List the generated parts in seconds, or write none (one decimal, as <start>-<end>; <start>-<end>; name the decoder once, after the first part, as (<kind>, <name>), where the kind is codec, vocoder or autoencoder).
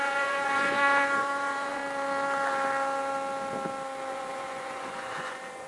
0.0-1.8 (vocoder, Vocos); 4.1-5.7